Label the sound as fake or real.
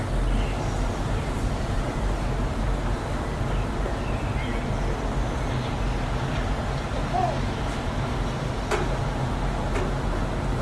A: real